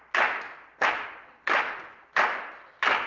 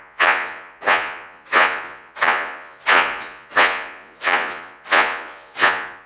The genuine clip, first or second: first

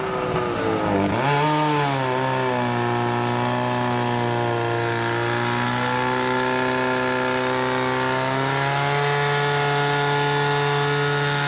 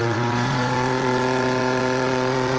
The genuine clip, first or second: first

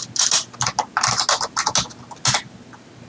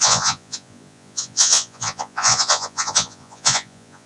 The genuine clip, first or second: first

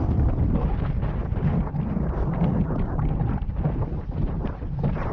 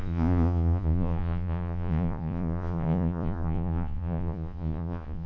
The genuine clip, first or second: first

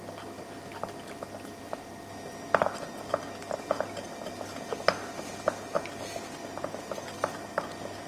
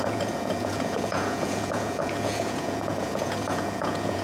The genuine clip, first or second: first